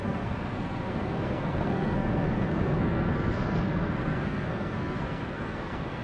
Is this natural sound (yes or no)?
no